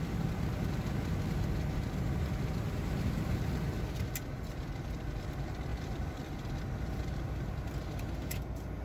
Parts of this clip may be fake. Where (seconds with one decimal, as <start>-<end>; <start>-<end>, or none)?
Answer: 5.7-6.5